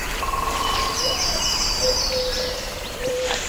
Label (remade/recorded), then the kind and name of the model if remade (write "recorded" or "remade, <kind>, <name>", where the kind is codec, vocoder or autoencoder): remade, vocoder, BigVGAN v2